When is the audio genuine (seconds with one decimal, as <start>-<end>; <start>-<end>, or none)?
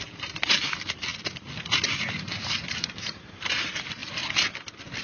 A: 1.1-2.2; 4.0-5.0